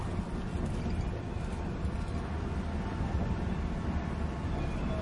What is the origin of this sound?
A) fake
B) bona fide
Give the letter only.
B